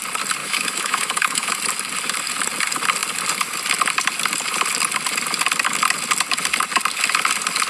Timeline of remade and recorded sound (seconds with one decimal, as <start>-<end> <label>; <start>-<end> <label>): 0.0-0.4 recorded; 0.4-1.6 remade; 1.6-7.7 recorded